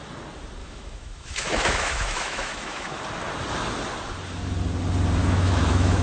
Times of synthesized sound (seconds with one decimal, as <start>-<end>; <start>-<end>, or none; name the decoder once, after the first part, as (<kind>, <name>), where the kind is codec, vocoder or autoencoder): 0.6-3.0 (autoencoder, DAC-VAE); 5.2-6.0